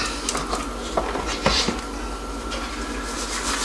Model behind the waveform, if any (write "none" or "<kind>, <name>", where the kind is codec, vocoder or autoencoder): none